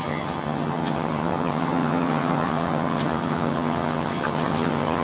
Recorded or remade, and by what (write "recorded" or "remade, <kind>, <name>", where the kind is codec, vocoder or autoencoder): remade, vocoder, HiFi-GAN